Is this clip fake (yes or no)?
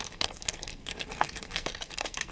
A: yes